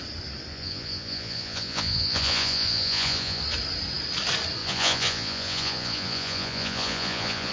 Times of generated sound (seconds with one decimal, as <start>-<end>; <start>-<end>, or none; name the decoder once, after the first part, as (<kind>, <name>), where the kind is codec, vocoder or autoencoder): 0.5-3.4 (vocoder, Vocos); 4.6-7.5